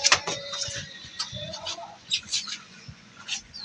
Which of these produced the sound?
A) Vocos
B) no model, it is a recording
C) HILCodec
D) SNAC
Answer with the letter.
A